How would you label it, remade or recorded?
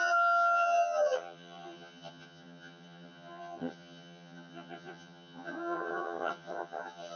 remade